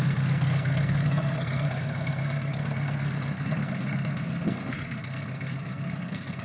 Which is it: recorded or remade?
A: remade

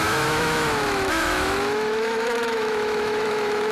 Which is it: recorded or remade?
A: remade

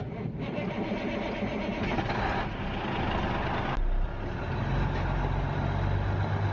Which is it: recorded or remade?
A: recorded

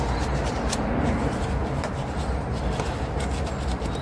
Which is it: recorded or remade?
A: recorded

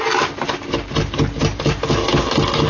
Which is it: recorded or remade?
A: remade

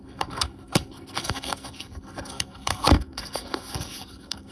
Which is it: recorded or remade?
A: remade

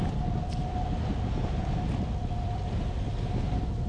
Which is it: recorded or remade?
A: recorded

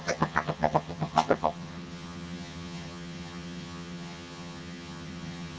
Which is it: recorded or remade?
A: remade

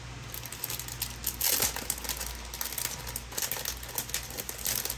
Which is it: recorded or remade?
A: recorded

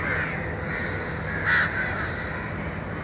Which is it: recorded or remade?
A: recorded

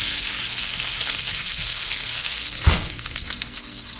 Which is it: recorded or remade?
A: remade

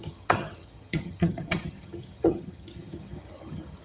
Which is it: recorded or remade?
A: remade